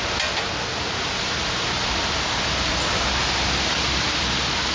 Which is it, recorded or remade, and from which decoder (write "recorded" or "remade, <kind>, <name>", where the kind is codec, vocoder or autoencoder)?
remade, vocoder, BigVGAN v2